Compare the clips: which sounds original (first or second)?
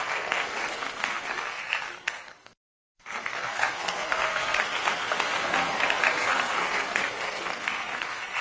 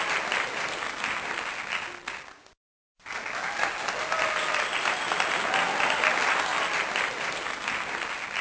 second